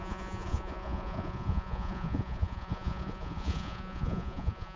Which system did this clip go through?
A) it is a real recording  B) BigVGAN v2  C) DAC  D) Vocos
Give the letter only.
D